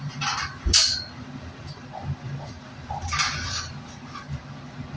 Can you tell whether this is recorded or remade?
recorded